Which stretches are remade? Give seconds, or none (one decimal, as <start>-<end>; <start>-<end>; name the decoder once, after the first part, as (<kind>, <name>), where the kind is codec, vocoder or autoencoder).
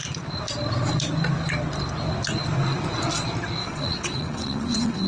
3.6-5.1 (vocoder, WaveNeXt)